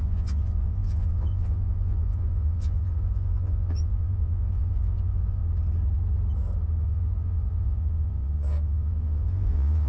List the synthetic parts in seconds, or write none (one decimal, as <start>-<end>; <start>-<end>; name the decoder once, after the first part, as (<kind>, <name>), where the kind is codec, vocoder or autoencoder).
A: 0.0-5.4 (vocoder, Vocos); 6.8-9.9